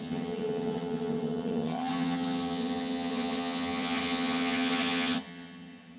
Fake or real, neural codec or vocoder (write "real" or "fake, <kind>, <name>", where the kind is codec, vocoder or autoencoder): fake, vocoder, HiFi-GAN